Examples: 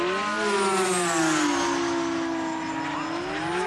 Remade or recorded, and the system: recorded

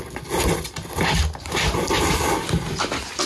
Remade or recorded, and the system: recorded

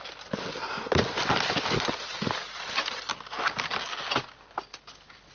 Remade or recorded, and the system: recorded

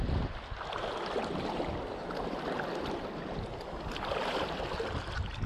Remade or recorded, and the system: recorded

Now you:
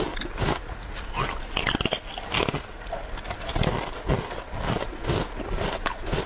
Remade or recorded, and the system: recorded